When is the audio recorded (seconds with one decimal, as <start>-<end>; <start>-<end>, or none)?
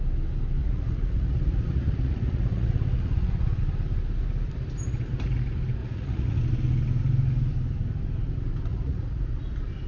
0.0-0.6; 3.6-5.8; 6.4-8.7; 9.3-9.9